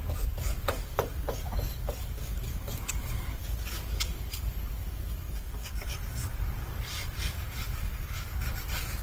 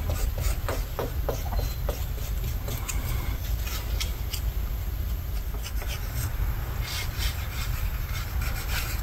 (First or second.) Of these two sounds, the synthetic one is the first